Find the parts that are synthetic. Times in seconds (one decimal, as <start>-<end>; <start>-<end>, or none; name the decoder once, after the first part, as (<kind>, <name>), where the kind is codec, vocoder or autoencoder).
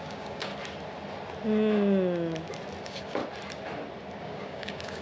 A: 0.0-0.5 (codec, DAC); 2.8-3.2; 4.2-5.0